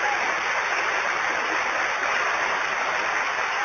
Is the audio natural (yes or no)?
yes